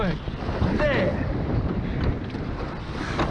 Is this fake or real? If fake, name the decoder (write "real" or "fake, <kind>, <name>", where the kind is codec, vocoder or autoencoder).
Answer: real